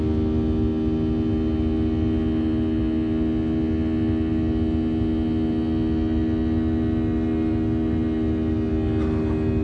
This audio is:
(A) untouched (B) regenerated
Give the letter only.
A